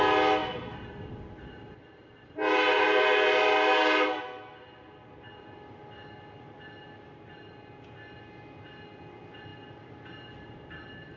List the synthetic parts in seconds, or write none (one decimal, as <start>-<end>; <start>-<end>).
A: 0.4-4.2